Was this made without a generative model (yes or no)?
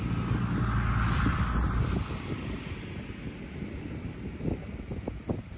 yes